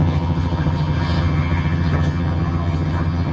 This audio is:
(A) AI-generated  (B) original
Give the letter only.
A